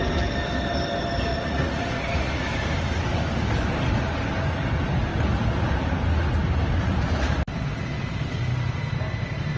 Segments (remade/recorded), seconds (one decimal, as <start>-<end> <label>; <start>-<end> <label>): 0.0-1.3 recorded; 1.3-2.4 remade; 2.4-9.6 recorded